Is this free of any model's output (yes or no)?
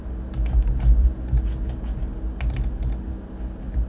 yes